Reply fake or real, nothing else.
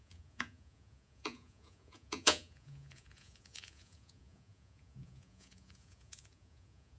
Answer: fake